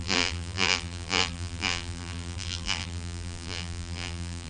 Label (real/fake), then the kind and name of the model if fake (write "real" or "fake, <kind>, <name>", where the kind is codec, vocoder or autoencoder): fake, vocoder, BigVGAN v2